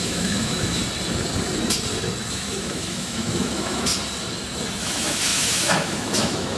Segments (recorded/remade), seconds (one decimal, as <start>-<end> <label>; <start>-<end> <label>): 0.0-0.8 remade; 0.8-2.3 recorded; 2.3-3.9 remade; 3.9-4.8 recorded; 4.8-6.6 remade